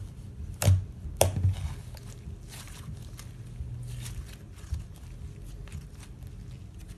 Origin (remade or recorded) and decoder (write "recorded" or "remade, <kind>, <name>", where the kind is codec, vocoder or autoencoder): recorded